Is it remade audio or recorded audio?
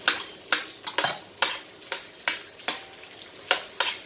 recorded